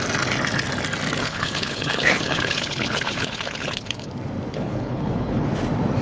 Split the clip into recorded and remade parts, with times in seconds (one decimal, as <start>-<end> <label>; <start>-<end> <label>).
0.0-1.2 recorded; 1.2-4.1 remade; 4.1-4.5 recorded; 4.5-5.5 remade; 5.5-6.0 recorded